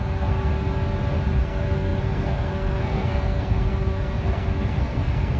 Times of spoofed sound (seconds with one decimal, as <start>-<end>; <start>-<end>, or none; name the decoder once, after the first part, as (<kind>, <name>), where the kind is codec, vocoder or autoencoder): 0.0-0.5 (codec, SNAC); 1.4-5.4